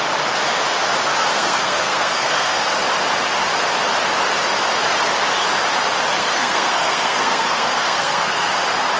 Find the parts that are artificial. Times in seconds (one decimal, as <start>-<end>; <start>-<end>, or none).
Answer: 1.3-2.7; 6.2-8.5